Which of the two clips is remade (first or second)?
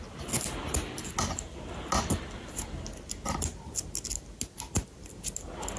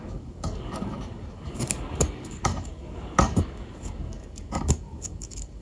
second